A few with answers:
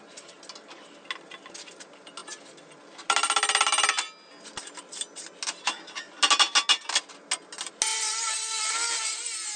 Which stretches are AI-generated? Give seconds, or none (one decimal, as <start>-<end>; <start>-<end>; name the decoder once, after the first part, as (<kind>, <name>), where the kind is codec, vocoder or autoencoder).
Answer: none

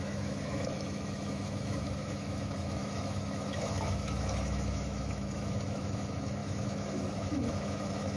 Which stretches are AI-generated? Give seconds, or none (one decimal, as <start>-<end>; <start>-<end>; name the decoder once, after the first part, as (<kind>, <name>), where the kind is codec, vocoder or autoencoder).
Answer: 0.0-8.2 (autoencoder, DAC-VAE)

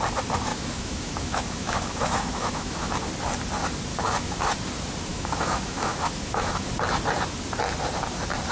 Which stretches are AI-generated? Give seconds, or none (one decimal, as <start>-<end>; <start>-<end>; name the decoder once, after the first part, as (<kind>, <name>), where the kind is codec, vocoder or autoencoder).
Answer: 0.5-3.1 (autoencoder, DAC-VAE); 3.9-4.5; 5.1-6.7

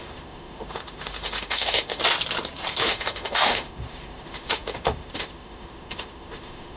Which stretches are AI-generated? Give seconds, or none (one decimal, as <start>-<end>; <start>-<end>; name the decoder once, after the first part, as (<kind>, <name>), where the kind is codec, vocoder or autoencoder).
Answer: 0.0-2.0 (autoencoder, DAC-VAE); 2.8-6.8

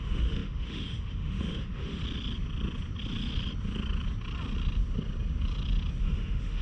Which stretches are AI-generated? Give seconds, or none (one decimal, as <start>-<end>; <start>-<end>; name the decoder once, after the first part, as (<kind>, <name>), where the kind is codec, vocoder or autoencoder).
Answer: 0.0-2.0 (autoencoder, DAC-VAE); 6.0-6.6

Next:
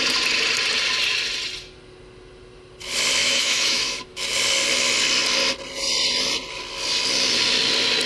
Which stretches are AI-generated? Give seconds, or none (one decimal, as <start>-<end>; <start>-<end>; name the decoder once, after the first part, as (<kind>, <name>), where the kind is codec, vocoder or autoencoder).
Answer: 3.2-4.2 (autoencoder, DAC-VAE)

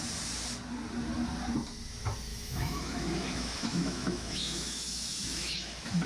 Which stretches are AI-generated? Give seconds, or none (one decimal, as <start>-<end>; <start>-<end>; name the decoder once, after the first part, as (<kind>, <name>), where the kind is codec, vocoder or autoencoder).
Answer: 2.3-6.1 (autoencoder, DAC-VAE)